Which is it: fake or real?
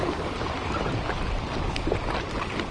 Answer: real